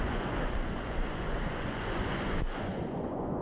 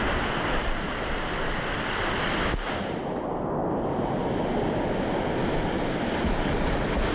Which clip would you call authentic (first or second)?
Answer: second